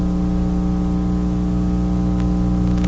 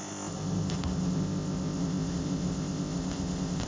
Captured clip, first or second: first